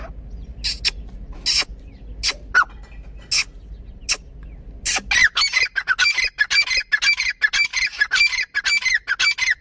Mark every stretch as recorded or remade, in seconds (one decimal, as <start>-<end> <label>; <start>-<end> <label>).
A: 0.0-7.7 recorded; 7.7-8.6 remade; 8.6-9.6 recorded